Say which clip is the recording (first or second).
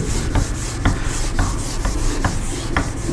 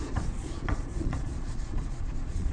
first